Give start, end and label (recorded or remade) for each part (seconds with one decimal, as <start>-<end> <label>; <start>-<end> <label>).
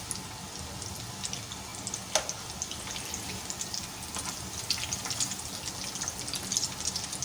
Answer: 0.0-7.2 recorded